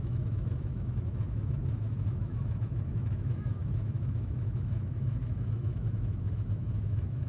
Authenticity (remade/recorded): remade